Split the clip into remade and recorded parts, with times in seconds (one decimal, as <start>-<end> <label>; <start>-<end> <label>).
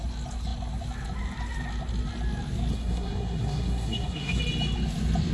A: 0.0-2.7 recorded; 2.7-4.4 remade; 4.4-5.3 recorded